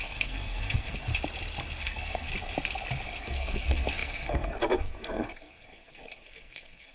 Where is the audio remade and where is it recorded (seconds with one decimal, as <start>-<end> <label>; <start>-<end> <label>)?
0.0-1.1 remade; 1.1-1.8 recorded; 1.8-2.3 remade; 2.3-3.2 recorded; 3.2-6.9 remade